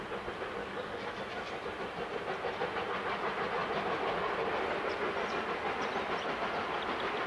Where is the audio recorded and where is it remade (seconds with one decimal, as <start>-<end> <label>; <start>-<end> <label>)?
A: 0.0-0.6 recorded; 0.6-1.2 remade; 1.2-7.3 recorded